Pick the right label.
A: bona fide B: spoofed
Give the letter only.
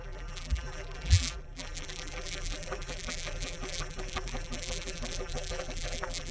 B